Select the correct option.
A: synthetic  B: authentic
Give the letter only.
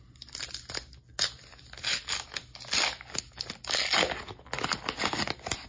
B